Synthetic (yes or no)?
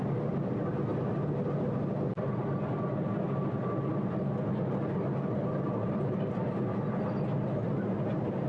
no